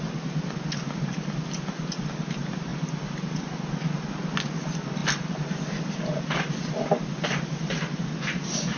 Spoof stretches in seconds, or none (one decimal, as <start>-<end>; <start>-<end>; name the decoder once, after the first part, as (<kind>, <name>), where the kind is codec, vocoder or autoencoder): none

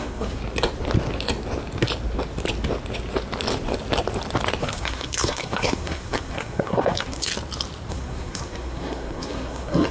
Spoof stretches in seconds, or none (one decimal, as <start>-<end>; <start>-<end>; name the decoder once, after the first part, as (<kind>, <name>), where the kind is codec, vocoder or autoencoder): 0.0-0.4 (codec, SNAC); 4.6-7.3; 7.9-9.9

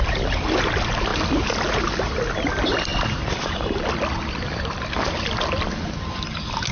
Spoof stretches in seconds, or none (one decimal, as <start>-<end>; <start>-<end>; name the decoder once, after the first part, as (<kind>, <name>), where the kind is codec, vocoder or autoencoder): none

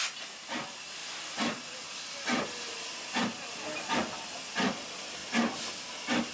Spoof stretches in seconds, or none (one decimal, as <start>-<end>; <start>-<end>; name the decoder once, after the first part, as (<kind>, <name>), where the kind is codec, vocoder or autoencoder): none

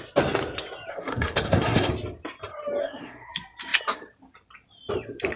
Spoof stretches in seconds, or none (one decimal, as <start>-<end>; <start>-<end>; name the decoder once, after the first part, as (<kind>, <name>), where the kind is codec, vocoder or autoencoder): 0.9-1.9 (codec, SNAC); 2.8-3.3

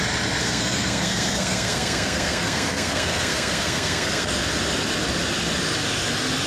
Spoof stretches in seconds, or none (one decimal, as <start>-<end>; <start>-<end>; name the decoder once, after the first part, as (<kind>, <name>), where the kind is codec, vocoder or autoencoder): 0.4-4.3 (codec, SNAC)

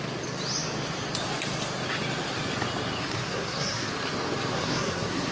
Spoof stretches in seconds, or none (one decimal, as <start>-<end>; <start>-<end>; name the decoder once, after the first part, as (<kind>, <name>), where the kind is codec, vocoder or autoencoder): 3.0-3.9 (codec, SNAC); 4.5-5.3

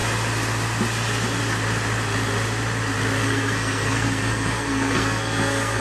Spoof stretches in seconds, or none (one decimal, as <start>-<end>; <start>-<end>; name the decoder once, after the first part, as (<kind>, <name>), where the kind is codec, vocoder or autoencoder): 3.2-5.8 (codec, SNAC)